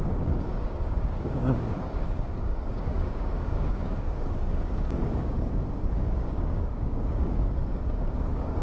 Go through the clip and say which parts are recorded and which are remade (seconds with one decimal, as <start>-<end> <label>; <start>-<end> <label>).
0.0-8.6 remade